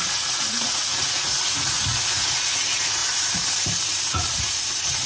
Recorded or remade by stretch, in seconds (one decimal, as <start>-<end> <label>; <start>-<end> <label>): 0.0-3.0 remade; 3.0-3.8 recorded; 3.8-5.1 remade